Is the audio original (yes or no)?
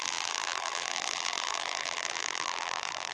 no